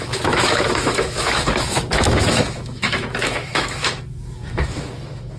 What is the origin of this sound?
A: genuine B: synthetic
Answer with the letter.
B